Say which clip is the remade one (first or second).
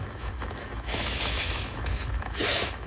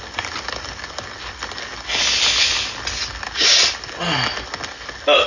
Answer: first